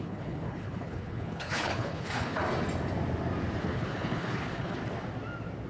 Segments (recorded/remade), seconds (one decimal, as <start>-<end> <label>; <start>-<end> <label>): 0.0-2.4 remade; 2.4-3.6 recorded; 3.6-4.8 remade; 4.8-5.7 recorded